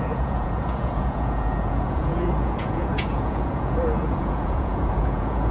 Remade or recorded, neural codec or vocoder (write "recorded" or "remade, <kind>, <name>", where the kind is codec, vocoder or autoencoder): remade, vocoder, Vocos